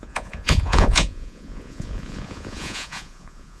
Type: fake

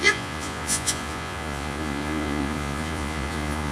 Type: fake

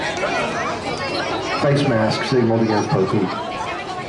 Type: real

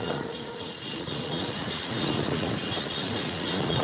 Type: fake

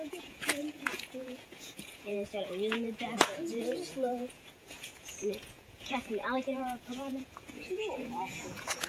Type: fake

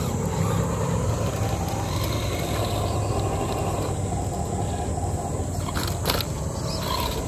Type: real